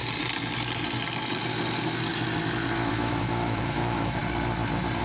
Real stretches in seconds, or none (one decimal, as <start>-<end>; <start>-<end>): 0.0-2.9; 4.2-5.0